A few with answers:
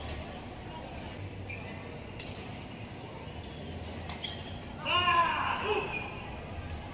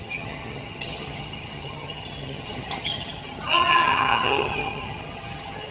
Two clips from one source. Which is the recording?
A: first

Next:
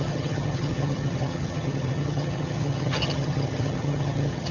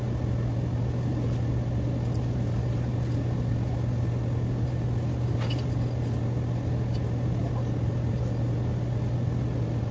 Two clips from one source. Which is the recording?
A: second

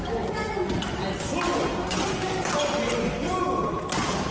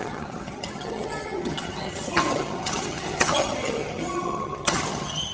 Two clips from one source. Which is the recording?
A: first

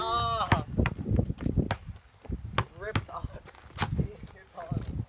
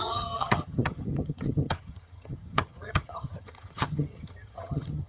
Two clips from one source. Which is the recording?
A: first